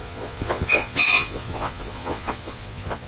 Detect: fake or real fake